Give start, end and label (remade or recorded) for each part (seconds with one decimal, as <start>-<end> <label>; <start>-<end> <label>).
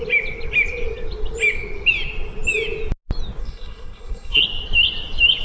0.0-3.4 recorded; 3.4-4.4 remade; 4.4-5.4 recorded